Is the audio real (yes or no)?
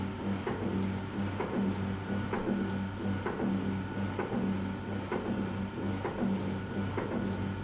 yes